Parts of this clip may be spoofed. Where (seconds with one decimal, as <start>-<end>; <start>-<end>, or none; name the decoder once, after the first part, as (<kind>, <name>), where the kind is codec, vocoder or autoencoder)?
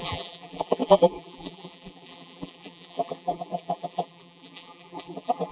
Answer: 0.0-5.5 (vocoder, BigVGAN v2)